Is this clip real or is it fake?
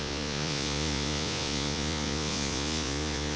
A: fake